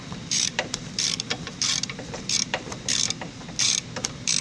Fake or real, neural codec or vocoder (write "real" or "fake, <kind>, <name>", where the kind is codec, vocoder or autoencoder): fake, vocoder, BigVGAN v2